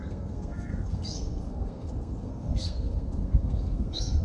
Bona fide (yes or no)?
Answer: no